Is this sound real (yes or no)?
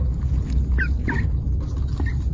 yes